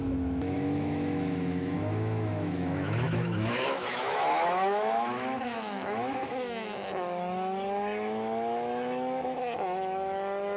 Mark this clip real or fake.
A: fake